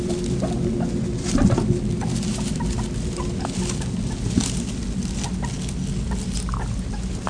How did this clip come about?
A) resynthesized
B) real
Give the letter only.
B